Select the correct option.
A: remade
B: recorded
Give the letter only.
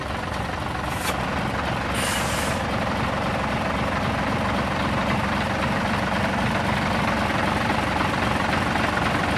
B